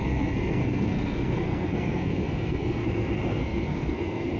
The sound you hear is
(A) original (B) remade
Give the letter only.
B